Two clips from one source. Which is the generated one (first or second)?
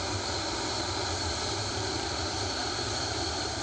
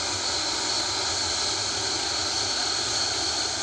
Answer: first